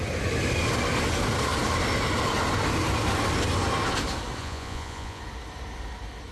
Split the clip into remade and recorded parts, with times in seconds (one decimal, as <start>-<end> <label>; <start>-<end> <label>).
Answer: 0.0-4.4 recorded; 4.4-5.2 remade; 5.2-6.3 recorded